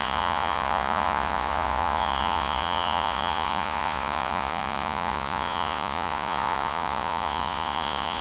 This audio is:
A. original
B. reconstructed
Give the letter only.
B